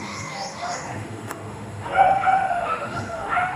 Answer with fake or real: fake